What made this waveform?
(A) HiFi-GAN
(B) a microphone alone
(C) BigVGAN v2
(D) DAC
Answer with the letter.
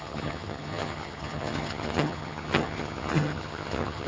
A